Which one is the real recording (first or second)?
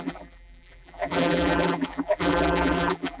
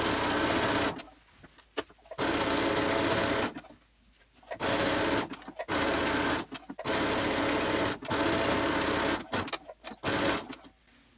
second